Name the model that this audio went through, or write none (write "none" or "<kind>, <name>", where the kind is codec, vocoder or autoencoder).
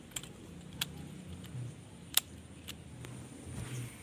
none